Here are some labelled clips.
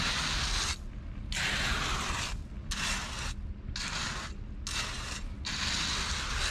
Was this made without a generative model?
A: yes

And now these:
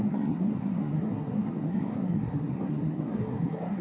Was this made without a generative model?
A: no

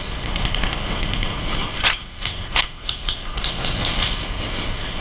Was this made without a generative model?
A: no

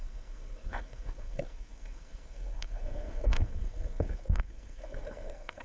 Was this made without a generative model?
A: no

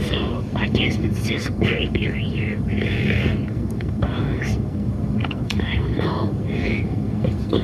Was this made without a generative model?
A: no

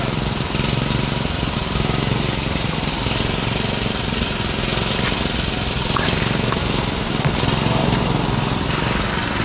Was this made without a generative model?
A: yes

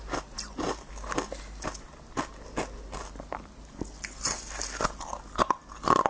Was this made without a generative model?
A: yes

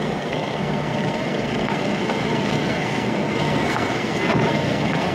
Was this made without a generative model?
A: no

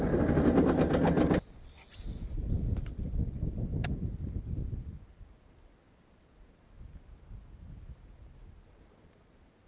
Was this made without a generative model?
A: yes